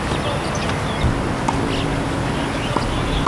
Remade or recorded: recorded